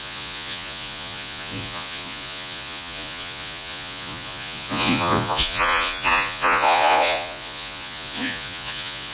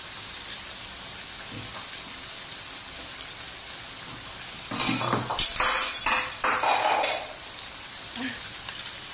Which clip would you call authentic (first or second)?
second